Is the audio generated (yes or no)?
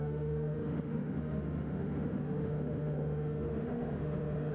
yes